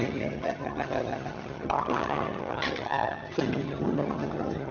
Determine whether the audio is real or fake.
fake